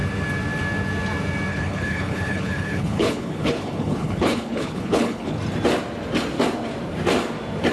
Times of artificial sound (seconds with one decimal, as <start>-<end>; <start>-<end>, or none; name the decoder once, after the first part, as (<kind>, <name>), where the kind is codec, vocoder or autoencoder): 1.5-5.4 (codec, HILCodec)

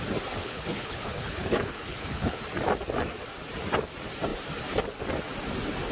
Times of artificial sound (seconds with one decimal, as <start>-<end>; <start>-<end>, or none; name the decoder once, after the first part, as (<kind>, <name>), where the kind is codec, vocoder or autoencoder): 0.4-2.4 (codec, HILCodec)

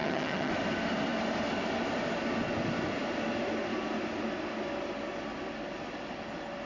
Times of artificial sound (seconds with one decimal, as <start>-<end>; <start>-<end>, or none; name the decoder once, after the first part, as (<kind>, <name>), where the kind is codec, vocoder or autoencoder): 0.0-0.5 (vocoder, HiFi-GAN)

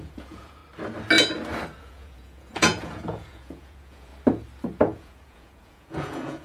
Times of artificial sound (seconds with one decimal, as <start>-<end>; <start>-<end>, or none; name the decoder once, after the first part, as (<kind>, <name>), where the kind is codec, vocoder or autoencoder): 0.0-0.6 (vocoder, Vocos); 1.8-4.1; 4.8-6.4